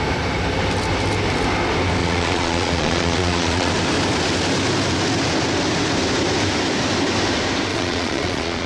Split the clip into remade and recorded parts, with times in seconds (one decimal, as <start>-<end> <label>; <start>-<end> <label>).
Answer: 0.0-2.0 recorded; 2.0-3.7 remade; 3.7-7.7 recorded; 7.7-8.7 remade